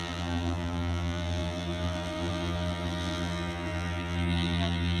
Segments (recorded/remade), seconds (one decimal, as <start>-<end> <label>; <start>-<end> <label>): 0.0-5.0 remade